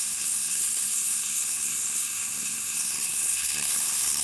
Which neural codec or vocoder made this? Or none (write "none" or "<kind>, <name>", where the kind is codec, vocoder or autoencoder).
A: codec, SNAC